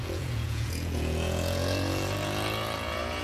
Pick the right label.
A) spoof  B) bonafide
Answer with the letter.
A